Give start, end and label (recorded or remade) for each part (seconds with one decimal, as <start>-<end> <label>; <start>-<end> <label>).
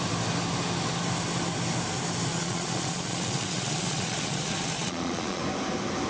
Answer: 0.0-2.3 recorded; 2.3-5.4 remade; 5.4-6.1 recorded